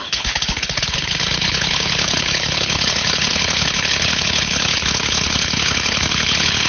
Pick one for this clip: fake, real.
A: fake